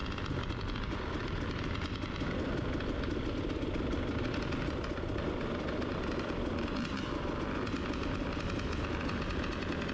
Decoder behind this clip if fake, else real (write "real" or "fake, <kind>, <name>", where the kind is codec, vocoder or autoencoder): real